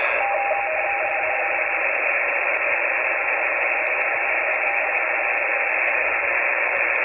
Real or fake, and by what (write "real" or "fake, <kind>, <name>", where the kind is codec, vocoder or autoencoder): real